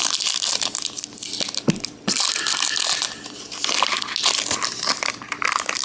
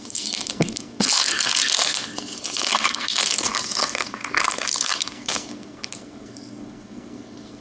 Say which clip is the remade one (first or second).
second